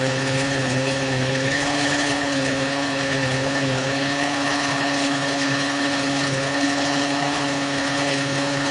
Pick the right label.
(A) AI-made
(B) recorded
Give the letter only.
A